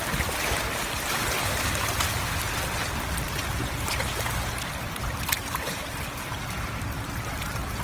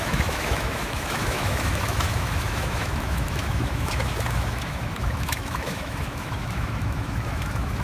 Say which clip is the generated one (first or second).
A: second